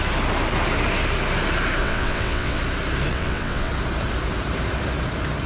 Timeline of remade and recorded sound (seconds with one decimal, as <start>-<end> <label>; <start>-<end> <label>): 0.0-1.8 recorded; 1.8-2.6 remade; 2.6-3.1 recorded; 3.1-3.7 remade; 3.7-5.5 recorded